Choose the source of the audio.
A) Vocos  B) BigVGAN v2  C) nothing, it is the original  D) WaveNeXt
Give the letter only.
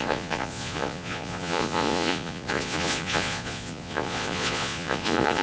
A